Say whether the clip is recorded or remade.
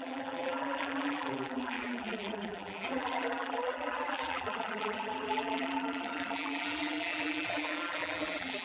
remade